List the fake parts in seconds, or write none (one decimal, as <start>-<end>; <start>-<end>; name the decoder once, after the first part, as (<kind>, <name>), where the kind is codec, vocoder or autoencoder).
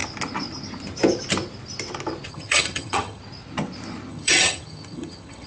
2.3-3.2 (vocoder, HiFi-GAN); 4.1-5.5